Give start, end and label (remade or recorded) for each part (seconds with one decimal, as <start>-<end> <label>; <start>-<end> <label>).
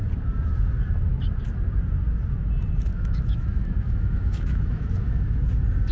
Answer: 0.0-2.9 recorded; 2.9-5.4 remade; 5.4-5.9 recorded